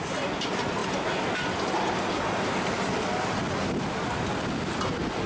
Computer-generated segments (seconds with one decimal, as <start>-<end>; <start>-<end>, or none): none